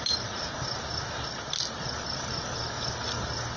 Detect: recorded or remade recorded